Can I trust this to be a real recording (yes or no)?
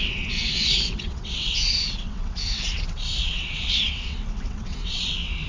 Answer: no